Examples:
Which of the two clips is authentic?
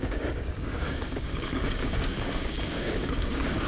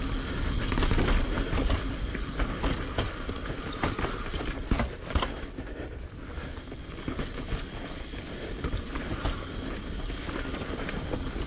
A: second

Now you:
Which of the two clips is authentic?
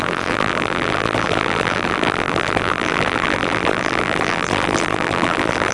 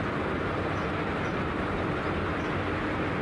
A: second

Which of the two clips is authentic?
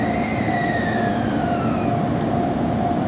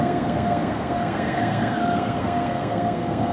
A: first